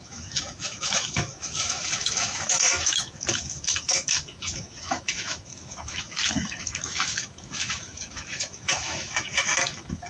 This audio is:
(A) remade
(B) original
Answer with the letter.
A